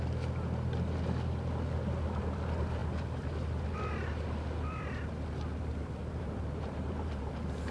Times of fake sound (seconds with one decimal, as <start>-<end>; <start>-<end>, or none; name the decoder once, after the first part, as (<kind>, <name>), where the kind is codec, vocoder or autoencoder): 6.0-7.3 (vocoder, BigVGAN v2)